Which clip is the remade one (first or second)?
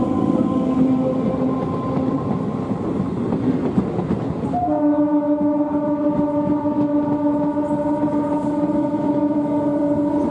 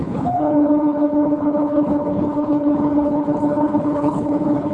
second